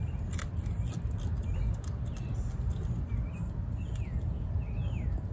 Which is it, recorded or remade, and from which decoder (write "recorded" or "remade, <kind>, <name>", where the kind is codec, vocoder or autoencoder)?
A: recorded